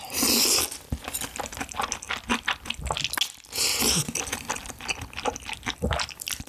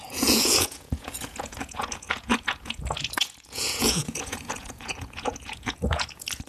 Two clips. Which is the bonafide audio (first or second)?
first